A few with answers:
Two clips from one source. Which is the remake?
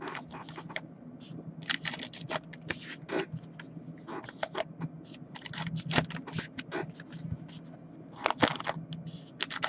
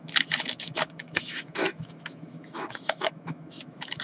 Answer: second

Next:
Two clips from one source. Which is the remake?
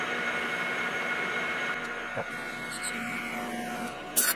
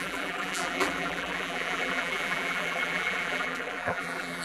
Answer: second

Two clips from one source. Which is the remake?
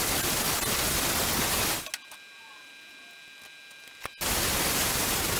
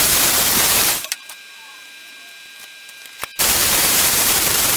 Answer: second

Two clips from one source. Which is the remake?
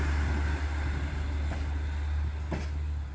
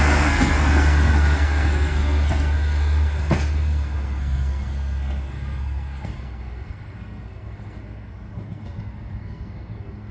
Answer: second